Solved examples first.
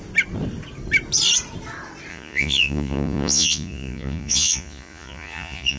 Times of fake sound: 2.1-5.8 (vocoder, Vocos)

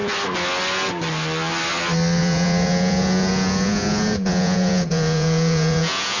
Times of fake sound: 2.2-6.2 (vocoder, Vocos)